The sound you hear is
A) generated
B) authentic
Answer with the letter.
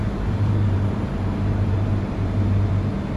A